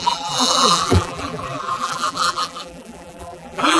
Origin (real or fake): fake